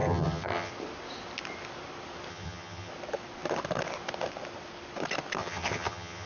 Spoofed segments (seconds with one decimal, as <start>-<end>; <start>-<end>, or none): 0.0-0.7; 2.3-2.9; 5.4-6.3